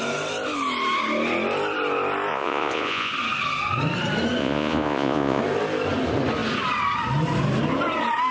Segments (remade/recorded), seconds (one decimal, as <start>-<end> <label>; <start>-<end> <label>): 0.0-2.3 recorded; 2.3-3.1 remade; 3.1-4.4 recorded; 4.4-5.4 remade; 5.4-8.3 recorded